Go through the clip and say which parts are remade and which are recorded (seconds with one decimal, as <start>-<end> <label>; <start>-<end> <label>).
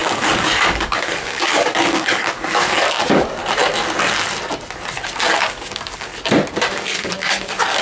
0.0-3.4 remade; 3.4-5.3 recorded; 5.3-6.1 remade; 6.1-6.7 recorded; 6.7-7.8 remade